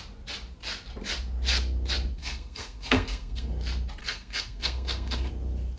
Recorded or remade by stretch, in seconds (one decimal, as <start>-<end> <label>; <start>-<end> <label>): 0.0-2.2 recorded; 2.2-3.5 remade; 3.5-4.0 recorded; 4.0-5.3 remade; 5.3-5.8 recorded